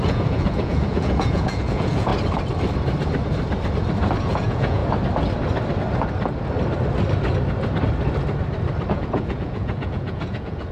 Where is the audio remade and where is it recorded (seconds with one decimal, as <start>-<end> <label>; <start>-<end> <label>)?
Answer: 0.0-2.1 remade; 2.1-4.2 recorded; 4.2-4.8 remade; 4.8-8.9 recorded; 8.9-10.7 remade